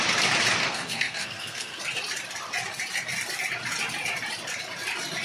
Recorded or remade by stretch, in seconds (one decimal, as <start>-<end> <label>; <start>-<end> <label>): 0.0-0.6 recorded; 0.6-1.8 remade; 1.8-5.2 recorded